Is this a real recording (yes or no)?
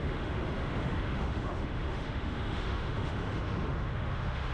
no